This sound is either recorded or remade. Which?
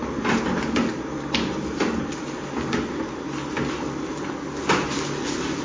recorded